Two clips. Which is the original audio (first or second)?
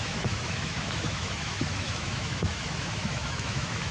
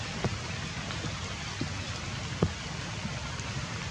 second